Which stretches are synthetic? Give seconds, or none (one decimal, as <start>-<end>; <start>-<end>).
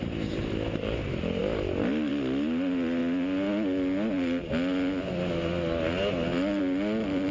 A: none